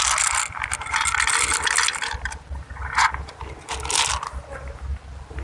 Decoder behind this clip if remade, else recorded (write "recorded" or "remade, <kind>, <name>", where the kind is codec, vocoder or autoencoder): recorded